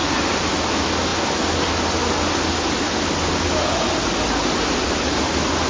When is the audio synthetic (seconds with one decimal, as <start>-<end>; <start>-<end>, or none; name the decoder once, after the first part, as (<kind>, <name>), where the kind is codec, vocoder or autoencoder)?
none

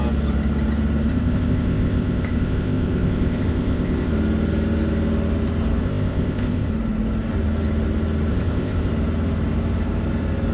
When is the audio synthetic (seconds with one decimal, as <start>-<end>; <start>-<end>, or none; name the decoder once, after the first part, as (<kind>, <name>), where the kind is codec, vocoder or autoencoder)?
1.1-4.1 (codec, ZipCodec); 5.8-6.7; 8.3-8.9

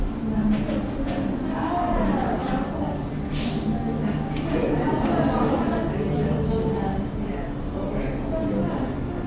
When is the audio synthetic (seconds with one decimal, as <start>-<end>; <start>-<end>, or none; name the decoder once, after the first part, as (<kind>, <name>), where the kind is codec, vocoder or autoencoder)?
none